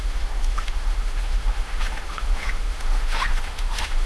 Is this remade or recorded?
remade